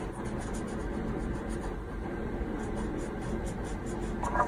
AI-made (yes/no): yes